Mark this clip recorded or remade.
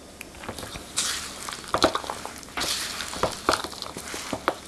recorded